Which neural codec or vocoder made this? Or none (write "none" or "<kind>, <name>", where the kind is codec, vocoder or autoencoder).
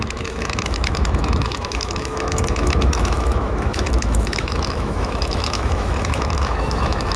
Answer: autoencoder, DAC-VAE